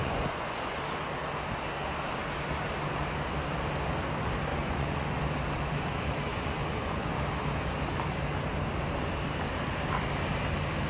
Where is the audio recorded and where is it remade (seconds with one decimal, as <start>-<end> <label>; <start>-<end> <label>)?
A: 0.0-0.8 remade; 0.8-4.5 recorded; 4.5-5.1 remade; 5.1-6.3 recorded; 6.3-7.2 remade; 7.2-10.9 recorded

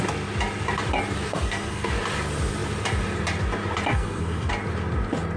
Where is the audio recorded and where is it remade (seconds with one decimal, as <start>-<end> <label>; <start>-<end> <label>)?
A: 0.0-1.3 recorded; 1.3-1.9 remade; 1.9-3.9 recorded; 3.9-4.5 remade; 4.5-5.4 recorded